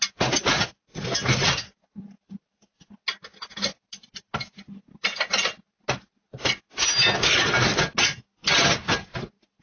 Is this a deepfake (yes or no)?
no